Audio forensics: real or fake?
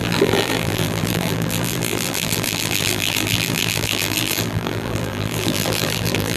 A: fake